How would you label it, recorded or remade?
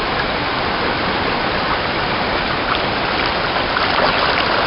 recorded